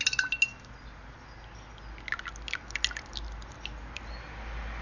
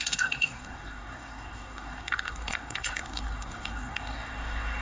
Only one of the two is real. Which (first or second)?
first